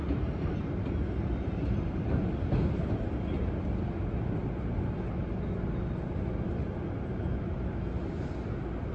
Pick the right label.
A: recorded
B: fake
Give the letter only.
A